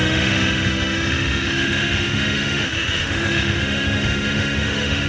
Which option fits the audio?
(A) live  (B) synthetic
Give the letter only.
B